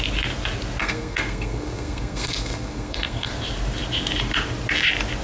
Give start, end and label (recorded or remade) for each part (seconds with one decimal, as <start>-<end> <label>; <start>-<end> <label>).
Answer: 0.0-0.8 recorded; 0.8-3.3 remade; 3.3-5.2 recorded